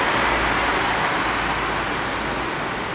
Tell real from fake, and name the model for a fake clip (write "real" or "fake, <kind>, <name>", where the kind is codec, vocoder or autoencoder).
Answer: real